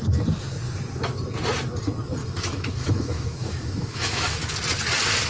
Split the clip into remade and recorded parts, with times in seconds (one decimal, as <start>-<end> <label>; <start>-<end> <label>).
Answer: 0.0-2.2 recorded; 2.2-4.4 remade; 4.4-5.3 recorded